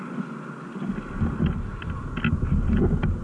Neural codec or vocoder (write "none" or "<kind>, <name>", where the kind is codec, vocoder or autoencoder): none